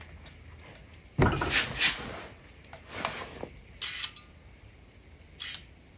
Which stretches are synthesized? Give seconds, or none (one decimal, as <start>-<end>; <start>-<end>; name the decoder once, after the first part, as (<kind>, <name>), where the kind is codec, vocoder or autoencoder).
none